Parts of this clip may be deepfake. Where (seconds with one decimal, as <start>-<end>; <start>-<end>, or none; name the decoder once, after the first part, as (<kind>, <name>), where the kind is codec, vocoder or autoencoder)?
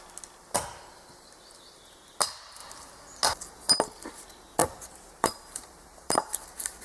4.6-6.3 (vocoder, BigVGAN v2)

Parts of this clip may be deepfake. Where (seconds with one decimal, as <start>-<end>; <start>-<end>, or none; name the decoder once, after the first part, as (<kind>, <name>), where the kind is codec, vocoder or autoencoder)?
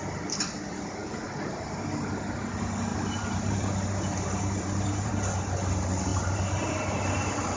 2.9-5.1 (vocoder, BigVGAN v2); 6.1-7.6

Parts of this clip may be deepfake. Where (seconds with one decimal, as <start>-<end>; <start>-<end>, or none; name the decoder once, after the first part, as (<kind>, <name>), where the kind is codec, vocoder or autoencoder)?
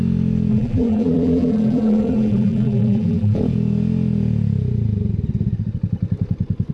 0.5-3.4 (vocoder, BigVGAN v2)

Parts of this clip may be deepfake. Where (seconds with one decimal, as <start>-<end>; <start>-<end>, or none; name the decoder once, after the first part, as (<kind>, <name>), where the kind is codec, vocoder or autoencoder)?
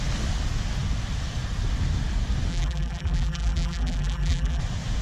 2.5-4.6 (vocoder, BigVGAN v2)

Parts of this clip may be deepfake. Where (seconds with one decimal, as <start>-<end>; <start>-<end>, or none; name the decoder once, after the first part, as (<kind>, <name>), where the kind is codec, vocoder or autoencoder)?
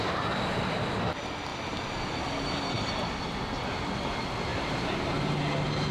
4.5-5.4 (vocoder, BigVGAN v2)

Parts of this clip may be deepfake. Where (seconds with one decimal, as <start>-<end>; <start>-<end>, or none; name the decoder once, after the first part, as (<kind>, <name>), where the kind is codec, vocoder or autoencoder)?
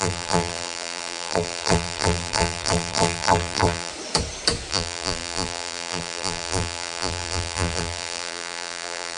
0.0-3.9 (vocoder, BigVGAN v2); 4.7-9.2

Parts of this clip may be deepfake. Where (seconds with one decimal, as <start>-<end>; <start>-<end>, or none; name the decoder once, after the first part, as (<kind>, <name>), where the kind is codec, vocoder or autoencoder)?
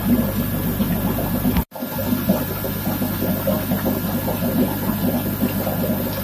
2.0-2.5 (vocoder, BigVGAN v2)